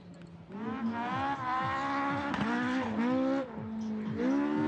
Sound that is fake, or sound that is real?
real